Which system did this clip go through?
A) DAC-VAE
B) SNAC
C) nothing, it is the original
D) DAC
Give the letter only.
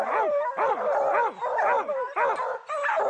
C